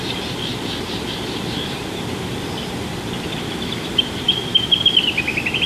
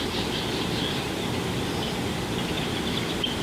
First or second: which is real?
second